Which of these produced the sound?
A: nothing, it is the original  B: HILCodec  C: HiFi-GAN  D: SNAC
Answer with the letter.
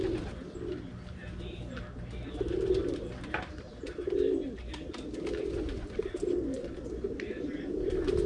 A